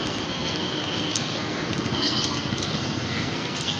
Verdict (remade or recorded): remade